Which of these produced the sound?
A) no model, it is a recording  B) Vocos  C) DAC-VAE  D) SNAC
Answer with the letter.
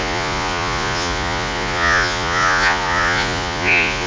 B